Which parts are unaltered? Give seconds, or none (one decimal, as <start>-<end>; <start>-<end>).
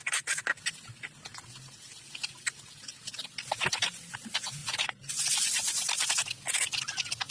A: 0.5-4.6; 5.1-7.3